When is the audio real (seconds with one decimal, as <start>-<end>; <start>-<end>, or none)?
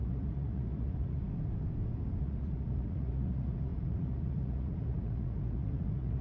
1.2-2.2